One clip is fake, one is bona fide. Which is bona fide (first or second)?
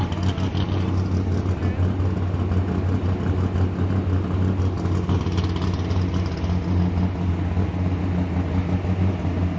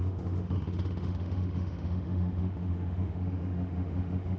first